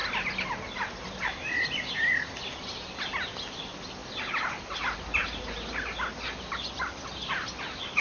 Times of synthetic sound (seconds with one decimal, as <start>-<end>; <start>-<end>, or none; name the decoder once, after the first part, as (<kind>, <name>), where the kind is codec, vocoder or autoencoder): none